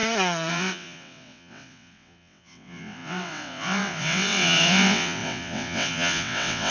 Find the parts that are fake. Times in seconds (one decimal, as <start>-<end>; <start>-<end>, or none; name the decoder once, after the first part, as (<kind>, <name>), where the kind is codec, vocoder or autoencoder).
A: 0.5-6.7 (vocoder, WaveNeXt)